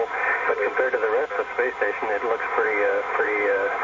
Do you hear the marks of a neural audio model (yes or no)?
no